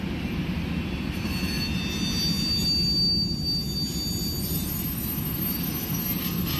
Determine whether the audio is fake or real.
real